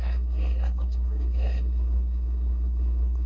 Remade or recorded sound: remade